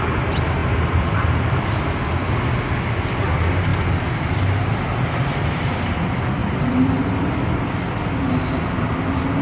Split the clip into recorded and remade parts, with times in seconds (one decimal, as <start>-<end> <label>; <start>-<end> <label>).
0.0-9.4 recorded